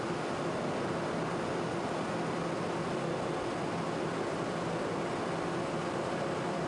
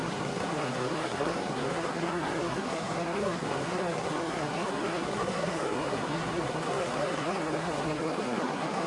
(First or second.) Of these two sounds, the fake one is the second